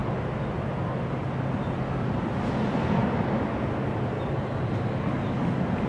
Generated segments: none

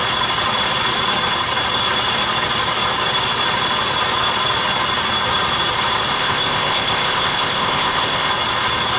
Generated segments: 6.1-8.3 (codec, ZipCodec)

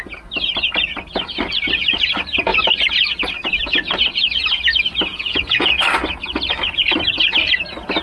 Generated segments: 5.1-5.7 (vocoder, Vocos)

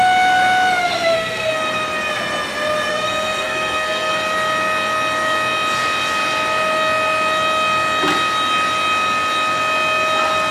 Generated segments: 0.8-1.6 (codec, SNAC); 2.9-4.1

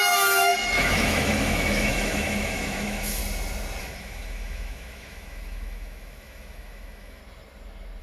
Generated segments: 0.0-3.2 (autoencoder, DAC-VAE); 3.8-7.2

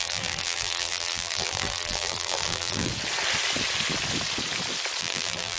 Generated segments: 0.0-2.9 (vocoder, BigVGAN v2); 5.0-5.6

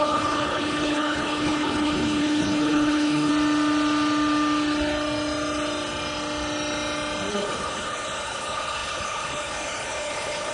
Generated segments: 0.0-3.3 (codec, HILCodec); 7.3-10.5